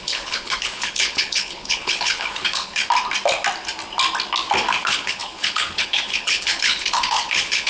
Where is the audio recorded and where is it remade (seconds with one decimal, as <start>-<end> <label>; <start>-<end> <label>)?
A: 0.0-2.8 remade; 2.8-4.8 recorded; 4.8-7.7 remade